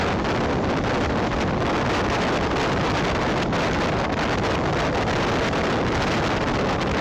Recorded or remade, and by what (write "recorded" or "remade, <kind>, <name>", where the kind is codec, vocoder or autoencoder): recorded